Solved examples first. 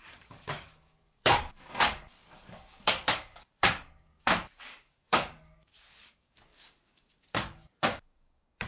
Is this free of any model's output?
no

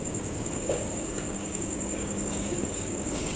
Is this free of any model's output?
no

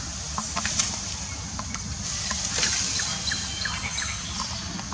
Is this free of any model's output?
yes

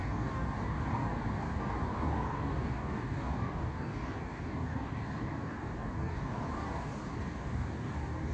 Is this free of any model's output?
no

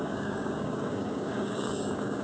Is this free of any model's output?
no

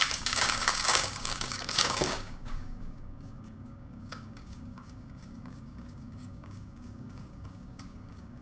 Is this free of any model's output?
no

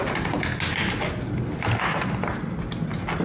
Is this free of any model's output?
yes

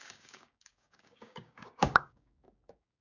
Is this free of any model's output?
no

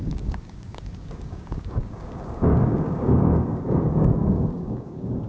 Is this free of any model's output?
no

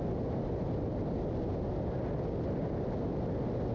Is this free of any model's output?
yes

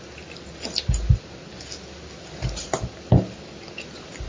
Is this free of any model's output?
yes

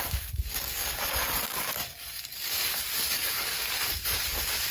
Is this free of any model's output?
no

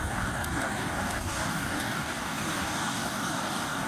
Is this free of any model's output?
no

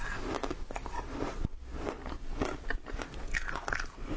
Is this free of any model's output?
yes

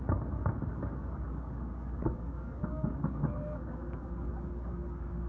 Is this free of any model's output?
no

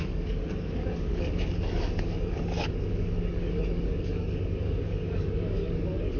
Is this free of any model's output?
no